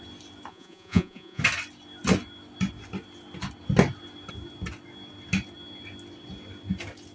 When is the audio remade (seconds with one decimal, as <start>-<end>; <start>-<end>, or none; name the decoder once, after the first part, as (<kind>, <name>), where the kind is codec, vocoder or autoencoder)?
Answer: 0.5-1.4 (vocoder, Vocos)